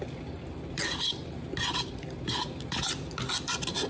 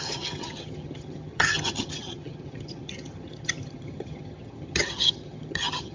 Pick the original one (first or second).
first